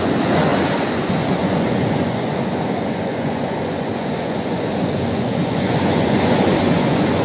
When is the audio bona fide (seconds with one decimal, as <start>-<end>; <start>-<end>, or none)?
none